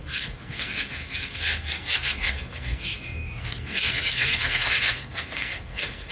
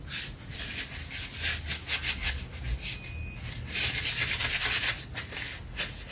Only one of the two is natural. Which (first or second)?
second